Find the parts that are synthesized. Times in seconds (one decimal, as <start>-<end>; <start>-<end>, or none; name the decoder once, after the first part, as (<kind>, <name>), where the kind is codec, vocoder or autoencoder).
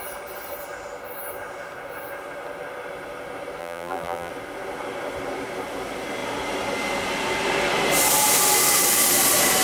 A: 3.6-4.3 (vocoder, BigVGAN v2)